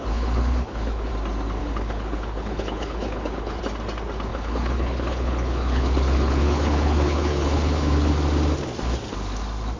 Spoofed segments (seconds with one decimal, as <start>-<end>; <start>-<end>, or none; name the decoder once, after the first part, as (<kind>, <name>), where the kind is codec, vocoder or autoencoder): 0.0-1.1 (codec, HILCodec); 1.6-3.6; 4.3-8.1